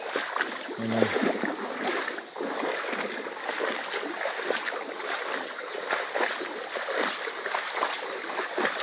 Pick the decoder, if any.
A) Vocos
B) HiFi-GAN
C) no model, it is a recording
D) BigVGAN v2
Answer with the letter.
C